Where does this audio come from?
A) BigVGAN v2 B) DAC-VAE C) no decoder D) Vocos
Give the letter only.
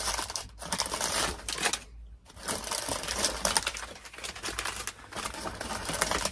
C